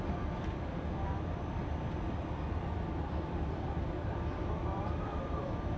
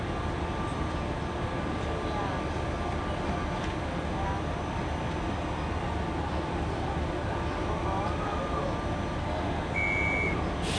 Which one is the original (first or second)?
second